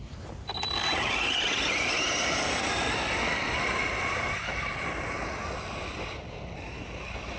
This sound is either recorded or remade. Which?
recorded